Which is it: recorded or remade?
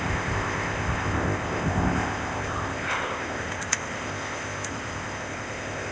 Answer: remade